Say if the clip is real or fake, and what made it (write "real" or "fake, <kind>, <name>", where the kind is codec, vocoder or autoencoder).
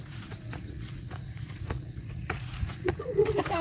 fake, vocoder, Vocos